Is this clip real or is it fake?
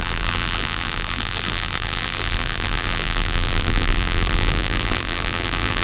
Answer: fake